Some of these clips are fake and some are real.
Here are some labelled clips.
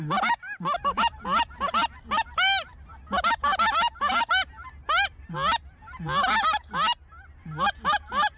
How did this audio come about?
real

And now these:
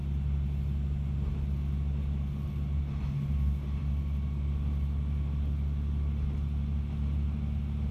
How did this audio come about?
real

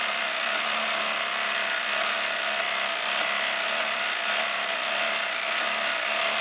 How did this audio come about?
real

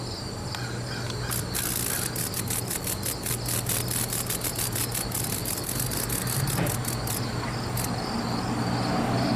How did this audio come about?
real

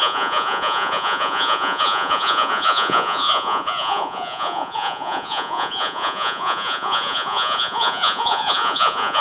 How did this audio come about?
fake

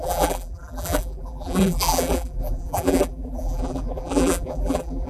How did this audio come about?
fake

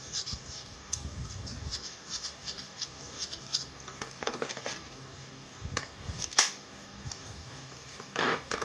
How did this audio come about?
fake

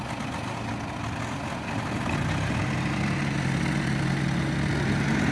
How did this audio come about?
real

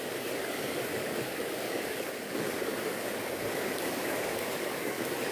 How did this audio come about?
fake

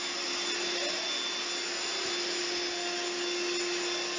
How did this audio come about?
real